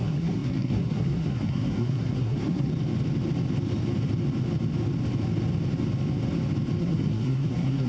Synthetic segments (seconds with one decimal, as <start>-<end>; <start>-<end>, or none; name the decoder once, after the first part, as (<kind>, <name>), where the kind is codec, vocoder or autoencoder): 0.0-2.7 (codec, SNAC); 6.8-7.9